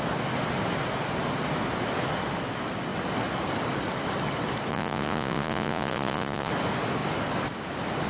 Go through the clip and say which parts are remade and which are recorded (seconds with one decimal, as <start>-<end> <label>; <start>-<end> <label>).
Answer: 0.0-4.7 recorded; 4.7-6.5 remade; 6.5-8.1 recorded